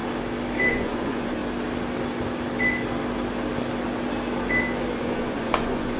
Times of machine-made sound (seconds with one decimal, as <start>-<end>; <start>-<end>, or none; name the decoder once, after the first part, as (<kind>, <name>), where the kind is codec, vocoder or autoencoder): 0.7-1.4 (vocoder, Vocos); 5.0-6.0